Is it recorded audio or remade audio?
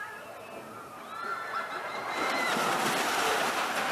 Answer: recorded